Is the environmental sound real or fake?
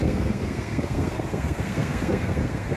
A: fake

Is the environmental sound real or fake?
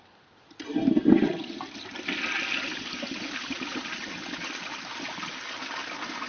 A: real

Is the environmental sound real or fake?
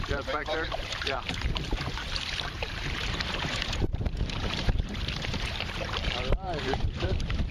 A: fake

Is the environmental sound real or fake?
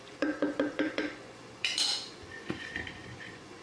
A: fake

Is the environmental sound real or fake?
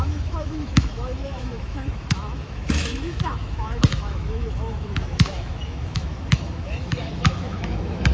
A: fake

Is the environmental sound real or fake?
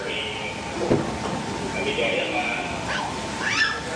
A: real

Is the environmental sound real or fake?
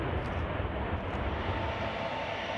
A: real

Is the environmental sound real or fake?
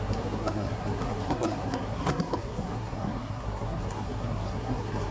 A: fake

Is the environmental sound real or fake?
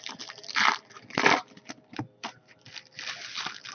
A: fake